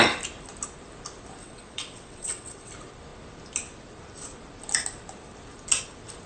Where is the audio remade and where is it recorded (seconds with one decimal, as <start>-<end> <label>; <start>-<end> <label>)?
0.0-1.4 recorded; 1.4-2.7 remade; 2.7-6.3 recorded